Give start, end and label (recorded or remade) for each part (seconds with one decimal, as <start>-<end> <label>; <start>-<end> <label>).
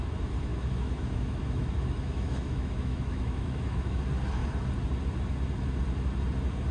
0.0-0.5 recorded; 0.5-4.0 remade; 4.0-6.7 recorded